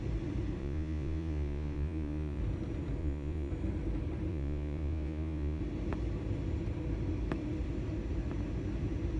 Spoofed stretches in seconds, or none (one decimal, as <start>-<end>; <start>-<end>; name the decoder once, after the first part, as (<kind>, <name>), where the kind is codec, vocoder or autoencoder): 0.6-2.4 (vocoder, Vocos); 3.0-3.5; 4.3-5.6